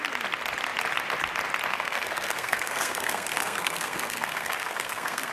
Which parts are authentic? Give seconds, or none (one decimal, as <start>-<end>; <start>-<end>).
0.0-1.7

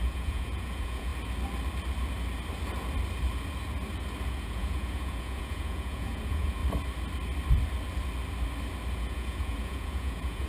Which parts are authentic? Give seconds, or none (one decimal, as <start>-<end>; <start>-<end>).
1.1-4.3; 6.6-8.9